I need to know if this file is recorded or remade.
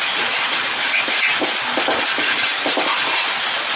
recorded